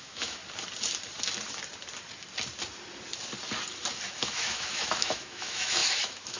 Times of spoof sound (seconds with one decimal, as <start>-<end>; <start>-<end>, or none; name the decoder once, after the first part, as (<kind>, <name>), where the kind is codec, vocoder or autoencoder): 0.0-0.4 (autoencoder, DAC-VAE); 4.2-6.4